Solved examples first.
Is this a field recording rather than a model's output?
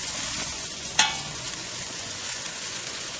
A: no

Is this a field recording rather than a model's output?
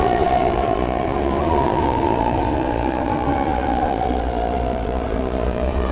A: no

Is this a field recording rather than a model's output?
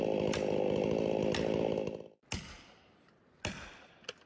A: yes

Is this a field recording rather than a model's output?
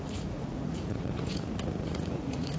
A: no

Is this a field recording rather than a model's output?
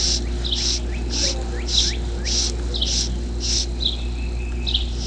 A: yes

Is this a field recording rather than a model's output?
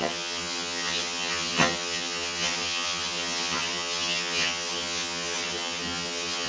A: no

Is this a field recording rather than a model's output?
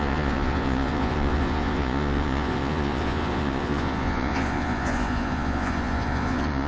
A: no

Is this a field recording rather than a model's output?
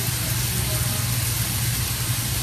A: yes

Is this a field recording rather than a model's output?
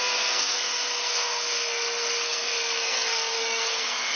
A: no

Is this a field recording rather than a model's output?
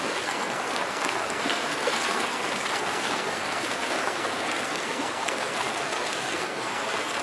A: no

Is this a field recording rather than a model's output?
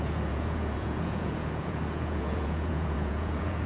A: no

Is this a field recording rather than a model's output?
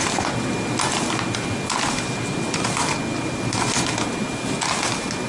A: yes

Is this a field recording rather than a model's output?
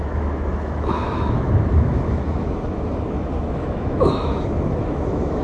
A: no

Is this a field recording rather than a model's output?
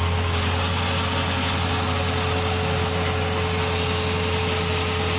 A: yes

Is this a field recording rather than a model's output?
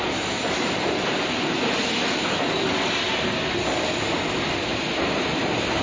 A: yes